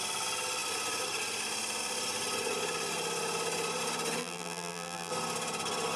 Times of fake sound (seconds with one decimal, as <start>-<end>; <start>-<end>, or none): 4.2-5.1